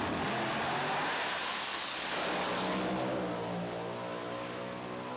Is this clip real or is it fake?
real